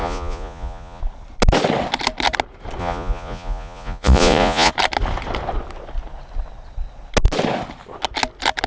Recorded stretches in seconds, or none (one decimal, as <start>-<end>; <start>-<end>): 1.0-2.8; 4.7-8.7